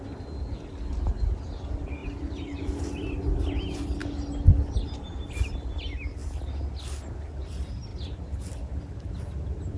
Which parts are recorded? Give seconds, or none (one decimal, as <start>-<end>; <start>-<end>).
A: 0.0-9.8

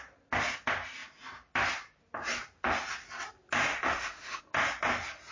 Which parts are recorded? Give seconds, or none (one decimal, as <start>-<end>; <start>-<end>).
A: 0.0-3.7; 4.4-5.3

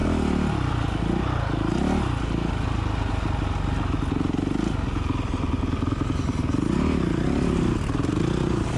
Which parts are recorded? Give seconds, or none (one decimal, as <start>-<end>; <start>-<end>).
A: 0.0-8.8

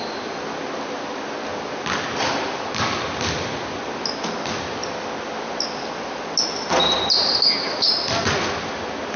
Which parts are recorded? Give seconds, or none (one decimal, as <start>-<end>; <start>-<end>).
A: 0.0-9.2

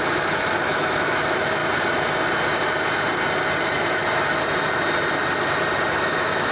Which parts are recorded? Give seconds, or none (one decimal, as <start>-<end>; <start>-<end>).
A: 1.6-3.6; 4.0-5.9

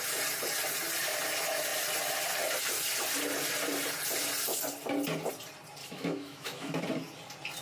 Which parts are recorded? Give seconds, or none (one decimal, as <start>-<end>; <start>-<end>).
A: 0.0-5.8; 6.8-7.6